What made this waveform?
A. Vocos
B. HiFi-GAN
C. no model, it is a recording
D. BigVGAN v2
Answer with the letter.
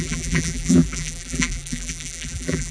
D